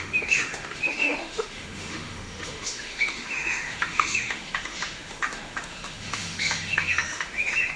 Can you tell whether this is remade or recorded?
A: remade